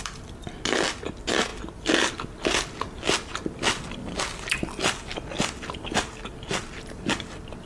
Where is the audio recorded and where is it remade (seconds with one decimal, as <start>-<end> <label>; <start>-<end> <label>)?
0.0-7.7 recorded